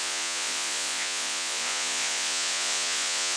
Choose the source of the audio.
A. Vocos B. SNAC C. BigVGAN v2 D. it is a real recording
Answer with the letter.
A